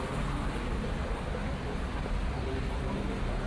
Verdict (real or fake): real